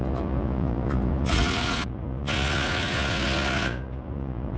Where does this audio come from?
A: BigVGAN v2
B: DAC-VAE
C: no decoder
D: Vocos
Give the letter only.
D